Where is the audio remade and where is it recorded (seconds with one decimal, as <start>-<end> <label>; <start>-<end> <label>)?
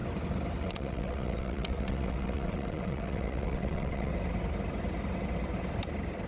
0.0-0.6 recorded; 0.6-4.1 remade; 4.1-6.3 recorded